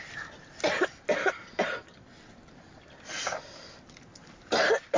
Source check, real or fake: real